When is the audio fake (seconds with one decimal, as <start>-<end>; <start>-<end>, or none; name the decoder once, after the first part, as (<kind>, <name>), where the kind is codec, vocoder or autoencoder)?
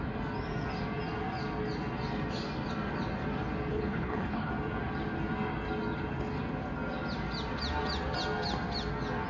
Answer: 3.7-4.5 (codec, HILCodec)